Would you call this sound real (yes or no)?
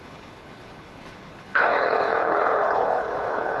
no